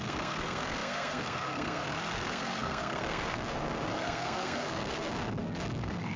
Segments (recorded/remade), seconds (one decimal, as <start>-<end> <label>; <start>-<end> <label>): 0.0-6.2 remade